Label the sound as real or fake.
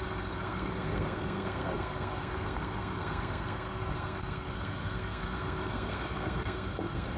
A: fake